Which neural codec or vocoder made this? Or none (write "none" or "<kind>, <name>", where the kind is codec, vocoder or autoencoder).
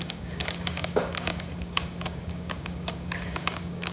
codec, DAC